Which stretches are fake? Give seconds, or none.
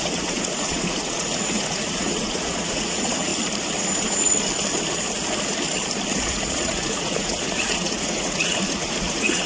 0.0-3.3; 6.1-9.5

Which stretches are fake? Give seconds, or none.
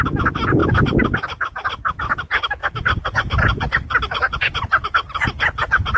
none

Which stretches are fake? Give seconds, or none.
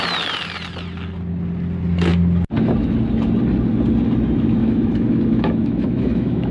4.6-6.5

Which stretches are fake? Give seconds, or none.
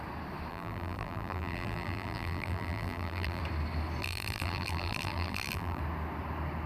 0.5-3.4; 4.0-5.8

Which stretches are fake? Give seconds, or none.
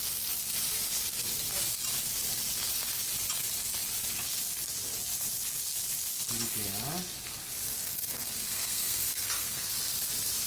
7.8-9.7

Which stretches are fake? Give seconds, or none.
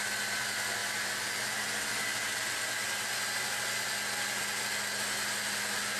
none